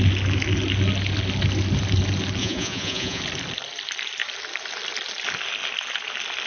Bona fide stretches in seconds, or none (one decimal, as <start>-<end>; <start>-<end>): 0.0-2.4; 3.2-6.5